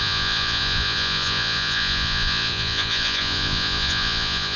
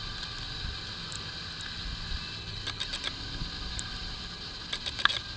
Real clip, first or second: second